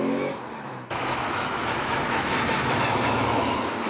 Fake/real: fake